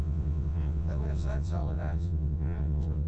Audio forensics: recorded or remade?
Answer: remade